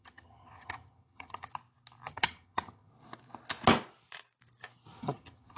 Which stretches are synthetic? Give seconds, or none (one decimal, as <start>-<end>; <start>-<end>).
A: 0.0-1.5; 2.1-2.9; 5.0-5.6